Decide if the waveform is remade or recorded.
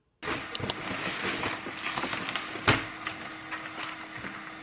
recorded